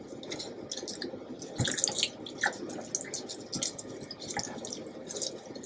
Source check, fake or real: real